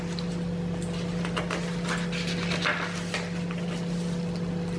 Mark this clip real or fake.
real